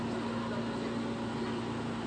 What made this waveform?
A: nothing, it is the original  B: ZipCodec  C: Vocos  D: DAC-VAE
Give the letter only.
A